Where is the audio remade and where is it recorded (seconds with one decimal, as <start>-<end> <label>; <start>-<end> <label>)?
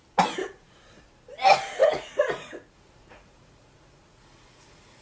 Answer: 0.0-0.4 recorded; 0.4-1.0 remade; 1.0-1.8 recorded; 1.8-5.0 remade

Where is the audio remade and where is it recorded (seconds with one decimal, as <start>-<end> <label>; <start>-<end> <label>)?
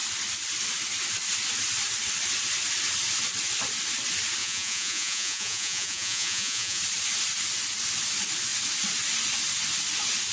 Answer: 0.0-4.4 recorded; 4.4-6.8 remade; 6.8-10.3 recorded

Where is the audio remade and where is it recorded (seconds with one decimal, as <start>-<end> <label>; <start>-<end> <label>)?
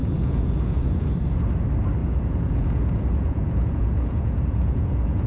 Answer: 0.0-1.1 remade; 1.1-2.0 recorded; 2.0-5.3 remade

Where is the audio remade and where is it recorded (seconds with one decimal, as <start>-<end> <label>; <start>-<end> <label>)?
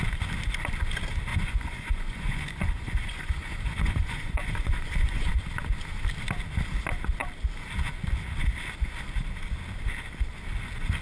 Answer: 0.0-1.3 recorded; 1.3-5.3 remade; 5.3-11.0 recorded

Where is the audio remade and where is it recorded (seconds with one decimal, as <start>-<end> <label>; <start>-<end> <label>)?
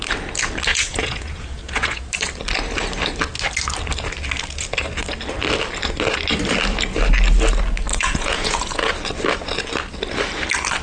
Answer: 0.0-0.7 recorded; 0.7-2.0 remade; 2.0-7.9 recorded; 7.9-8.9 remade; 8.9-10.8 recorded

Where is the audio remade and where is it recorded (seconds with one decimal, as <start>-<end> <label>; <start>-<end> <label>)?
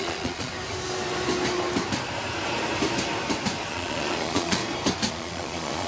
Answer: 0.0-0.5 remade; 0.5-3.7 recorded; 3.7-4.6 remade; 4.6-5.1 recorded; 5.1-5.9 remade